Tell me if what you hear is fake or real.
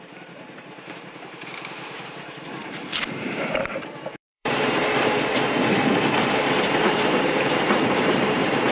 fake